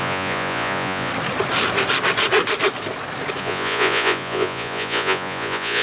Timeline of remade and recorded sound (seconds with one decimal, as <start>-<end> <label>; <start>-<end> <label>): 0.0-1.1 remade; 1.1-3.4 recorded; 3.4-5.8 remade